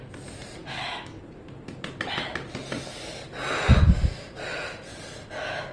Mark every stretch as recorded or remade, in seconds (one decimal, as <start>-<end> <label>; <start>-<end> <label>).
0.0-0.6 recorded; 0.6-1.2 remade; 1.2-5.7 recorded